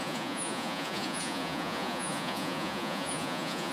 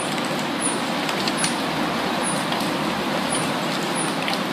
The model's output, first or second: first